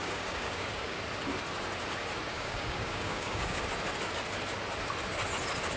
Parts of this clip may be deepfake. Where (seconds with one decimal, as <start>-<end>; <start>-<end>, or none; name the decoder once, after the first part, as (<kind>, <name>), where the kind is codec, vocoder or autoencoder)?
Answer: 0.0-1.0 (codec, DAC); 2.3-3.6

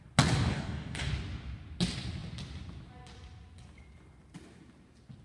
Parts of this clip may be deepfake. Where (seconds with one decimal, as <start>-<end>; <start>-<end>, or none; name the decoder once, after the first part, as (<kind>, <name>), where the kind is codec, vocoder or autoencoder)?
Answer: 0.5-1.1 (codec, DAC)

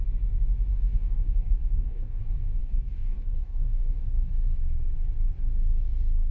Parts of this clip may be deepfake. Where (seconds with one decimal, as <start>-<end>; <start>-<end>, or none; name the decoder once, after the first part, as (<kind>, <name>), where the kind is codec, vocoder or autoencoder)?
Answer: 0.7-2.2 (codec, DAC); 2.6-4.3

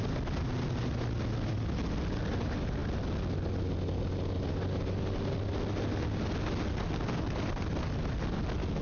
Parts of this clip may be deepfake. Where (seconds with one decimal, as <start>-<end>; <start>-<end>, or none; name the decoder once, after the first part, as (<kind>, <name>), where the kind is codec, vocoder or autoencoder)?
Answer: none

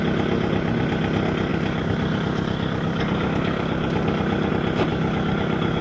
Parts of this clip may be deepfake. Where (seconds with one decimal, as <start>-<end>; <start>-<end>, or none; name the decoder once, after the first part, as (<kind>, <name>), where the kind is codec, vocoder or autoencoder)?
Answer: 1.5-4.5 (codec, DAC); 4.9-5.8